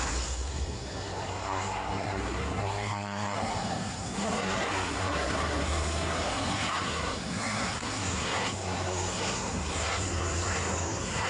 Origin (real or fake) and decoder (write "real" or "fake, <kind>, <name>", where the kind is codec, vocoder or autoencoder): fake, codec, SNAC